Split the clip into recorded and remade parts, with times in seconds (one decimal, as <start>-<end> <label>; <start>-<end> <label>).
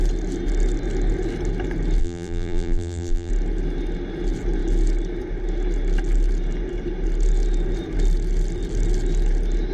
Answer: 0.0-2.0 recorded; 2.0-3.3 remade; 3.3-9.7 recorded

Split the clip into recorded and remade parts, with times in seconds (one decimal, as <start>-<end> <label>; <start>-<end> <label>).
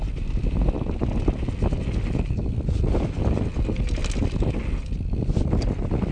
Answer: 0.0-6.1 recorded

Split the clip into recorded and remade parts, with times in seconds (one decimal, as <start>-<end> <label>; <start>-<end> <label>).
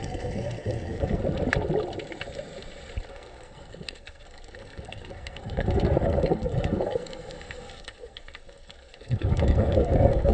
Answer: 0.0-1.2 remade; 1.2-3.1 recorded; 3.1-10.3 remade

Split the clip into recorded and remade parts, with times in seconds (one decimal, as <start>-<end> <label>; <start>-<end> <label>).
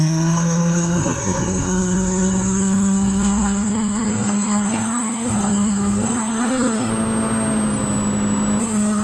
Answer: 0.0-6.9 remade; 6.9-8.6 recorded; 8.6-9.0 remade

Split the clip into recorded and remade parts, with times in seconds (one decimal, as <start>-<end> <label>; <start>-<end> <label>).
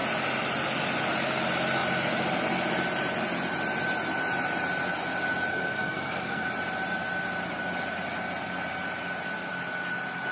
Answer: 0.0-5.5 recorded; 5.5-6.5 remade; 6.5-10.3 recorded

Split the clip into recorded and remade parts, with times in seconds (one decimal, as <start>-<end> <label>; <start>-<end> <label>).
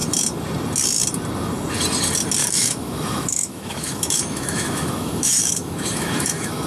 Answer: 0.0-2.4 recorded; 2.4-6.7 remade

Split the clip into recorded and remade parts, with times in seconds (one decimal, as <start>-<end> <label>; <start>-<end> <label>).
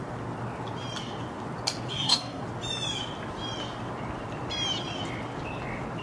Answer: 0.0-1.9 recorded; 1.9-2.4 remade; 2.4-6.0 recorded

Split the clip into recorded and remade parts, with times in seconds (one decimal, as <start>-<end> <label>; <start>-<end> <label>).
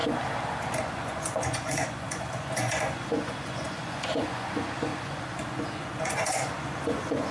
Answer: 0.0-0.8 recorded; 0.8-7.3 remade